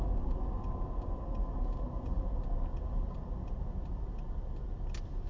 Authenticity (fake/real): real